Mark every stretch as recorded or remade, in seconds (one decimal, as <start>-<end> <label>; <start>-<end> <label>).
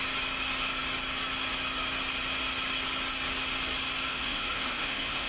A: 0.0-4.1 recorded; 4.1-5.3 remade